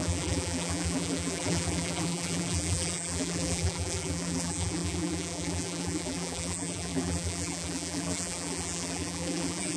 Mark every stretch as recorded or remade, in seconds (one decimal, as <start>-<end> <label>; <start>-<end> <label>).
0.0-9.8 remade